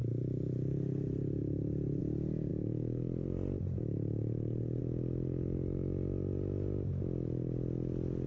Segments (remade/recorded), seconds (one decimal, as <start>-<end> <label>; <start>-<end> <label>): 0.0-2.0 remade; 2.0-2.5 recorded; 2.5-4.8 remade; 4.8-8.3 recorded